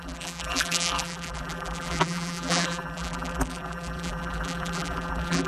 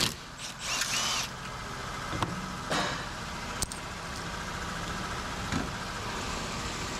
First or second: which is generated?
first